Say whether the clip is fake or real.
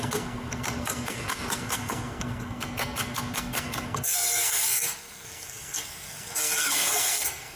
fake